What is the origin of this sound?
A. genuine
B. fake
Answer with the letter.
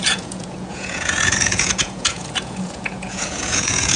B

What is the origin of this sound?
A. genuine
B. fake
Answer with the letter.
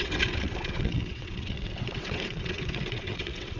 B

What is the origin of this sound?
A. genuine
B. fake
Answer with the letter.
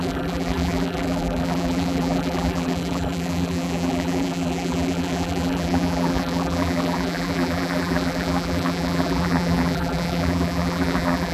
B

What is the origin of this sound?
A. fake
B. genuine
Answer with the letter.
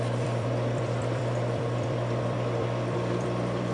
A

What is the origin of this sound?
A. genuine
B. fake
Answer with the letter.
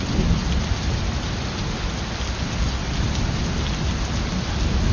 A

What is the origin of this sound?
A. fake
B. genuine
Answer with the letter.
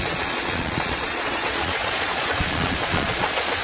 A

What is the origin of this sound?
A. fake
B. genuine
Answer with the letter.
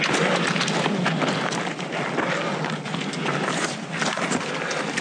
B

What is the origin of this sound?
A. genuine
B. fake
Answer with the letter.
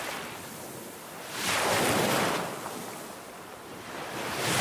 A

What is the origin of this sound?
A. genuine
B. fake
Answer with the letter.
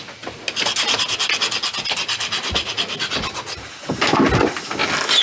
A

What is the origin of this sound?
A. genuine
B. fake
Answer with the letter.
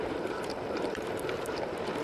B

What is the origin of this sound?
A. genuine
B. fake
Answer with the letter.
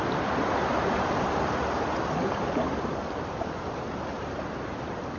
A